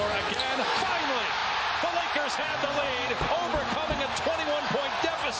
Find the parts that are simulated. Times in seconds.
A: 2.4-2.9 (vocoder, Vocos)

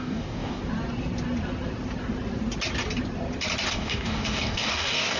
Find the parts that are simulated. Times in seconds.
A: 0.0-0.6 (codec, DAC); 3.7-5.2

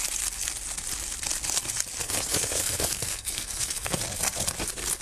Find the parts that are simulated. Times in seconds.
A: 2.0-4.0 (codec, SNAC)